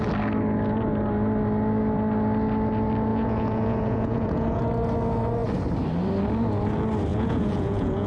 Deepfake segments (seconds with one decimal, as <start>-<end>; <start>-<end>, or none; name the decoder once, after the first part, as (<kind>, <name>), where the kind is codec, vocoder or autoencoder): 3.1-4.6 (vocoder, Vocos); 7.1-8.1